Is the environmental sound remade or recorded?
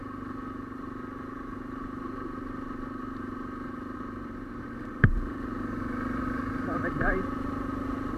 remade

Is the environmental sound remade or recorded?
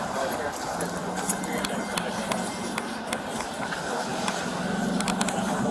recorded